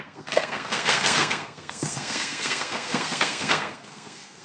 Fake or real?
fake